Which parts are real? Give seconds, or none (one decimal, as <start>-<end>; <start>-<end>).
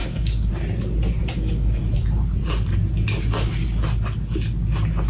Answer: 0.5-1.2; 1.8-5.1